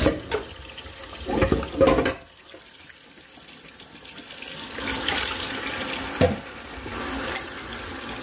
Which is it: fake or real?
real